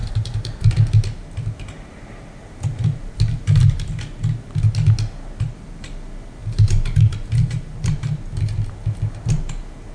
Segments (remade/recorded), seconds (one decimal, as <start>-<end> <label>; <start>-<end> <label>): 0.0-0.7 remade; 0.7-2.4 recorded; 2.4-3.9 remade; 3.9-6.4 recorded; 6.4-9.5 remade; 9.5-9.9 recorded